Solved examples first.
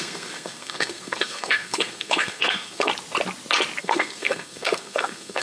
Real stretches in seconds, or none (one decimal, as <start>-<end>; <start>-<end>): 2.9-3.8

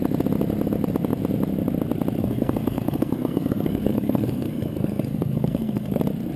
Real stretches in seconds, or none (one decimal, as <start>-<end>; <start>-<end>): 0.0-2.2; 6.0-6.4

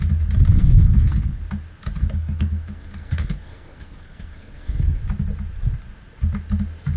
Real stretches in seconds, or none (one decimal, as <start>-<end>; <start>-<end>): 0.0-0.5; 1.4-2.0; 5.0-7.0

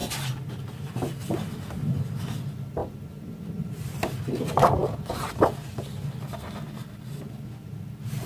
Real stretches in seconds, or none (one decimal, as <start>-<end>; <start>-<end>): 0.0-8.3

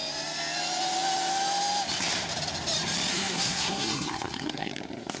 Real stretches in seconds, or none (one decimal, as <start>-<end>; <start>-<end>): 0.0-3.1; 4.7-5.2

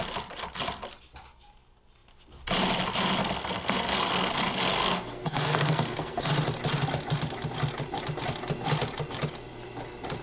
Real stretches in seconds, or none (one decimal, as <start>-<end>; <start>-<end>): 0.0-3.2; 6.3-10.2

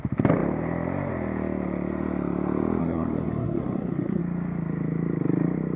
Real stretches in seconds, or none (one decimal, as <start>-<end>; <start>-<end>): 0.0-2.8; 4.2-5.8

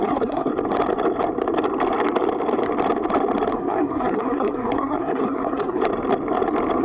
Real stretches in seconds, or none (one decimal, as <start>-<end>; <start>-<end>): 0.5-3.5; 5.8-6.8